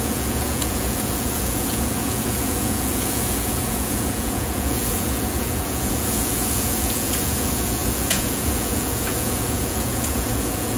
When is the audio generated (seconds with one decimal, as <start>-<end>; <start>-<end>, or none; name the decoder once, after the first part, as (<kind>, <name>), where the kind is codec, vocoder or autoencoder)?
0.0-10.8 (vocoder, Vocos)